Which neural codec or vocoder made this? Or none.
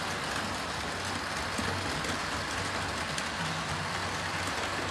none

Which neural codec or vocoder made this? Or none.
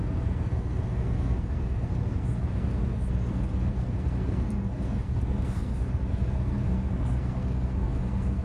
codec, SNAC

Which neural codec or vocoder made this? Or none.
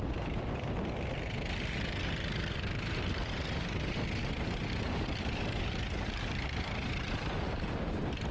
none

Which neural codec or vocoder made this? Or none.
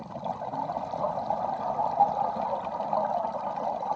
none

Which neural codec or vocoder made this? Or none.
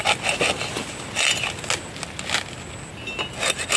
none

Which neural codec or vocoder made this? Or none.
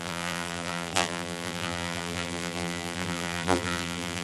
vocoder, BigVGAN v2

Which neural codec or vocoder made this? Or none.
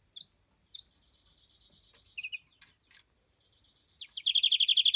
none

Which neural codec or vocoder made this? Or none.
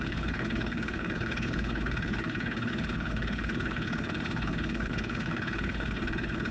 codec, HILCodec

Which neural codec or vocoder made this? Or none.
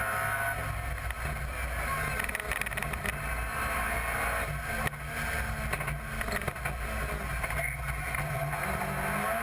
none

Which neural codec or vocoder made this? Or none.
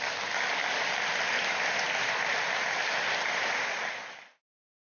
none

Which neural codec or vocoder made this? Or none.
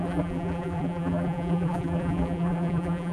vocoder, BigVGAN v2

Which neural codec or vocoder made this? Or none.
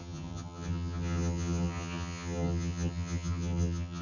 vocoder, HiFi-GAN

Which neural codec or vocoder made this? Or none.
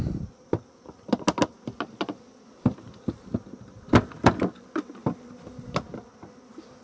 none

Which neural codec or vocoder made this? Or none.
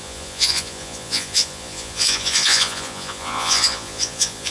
vocoder, Vocos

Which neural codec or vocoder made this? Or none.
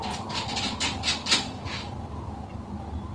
none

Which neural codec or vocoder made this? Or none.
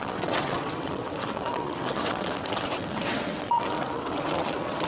vocoder, WaveNeXt